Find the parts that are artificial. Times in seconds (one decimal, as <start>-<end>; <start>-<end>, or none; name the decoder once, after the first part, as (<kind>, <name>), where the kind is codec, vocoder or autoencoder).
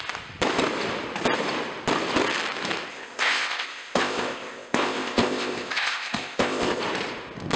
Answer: 2.9-6.8 (codec, ZipCodec)